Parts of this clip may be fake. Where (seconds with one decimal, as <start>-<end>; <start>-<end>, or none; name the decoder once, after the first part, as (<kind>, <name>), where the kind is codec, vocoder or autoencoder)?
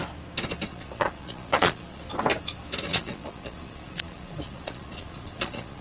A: 0.7-2.0 (vocoder, Vocos); 2.9-5.8